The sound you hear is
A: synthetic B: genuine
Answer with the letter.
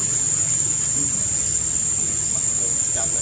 B